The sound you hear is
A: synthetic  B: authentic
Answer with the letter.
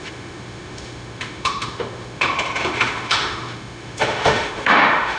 A